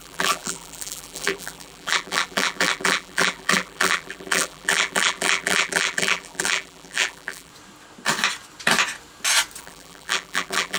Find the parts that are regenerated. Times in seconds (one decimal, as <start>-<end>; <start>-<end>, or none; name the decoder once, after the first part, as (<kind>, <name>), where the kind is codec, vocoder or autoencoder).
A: 0.0-7.5 (vocoder, BigVGAN v2); 9.6-10.8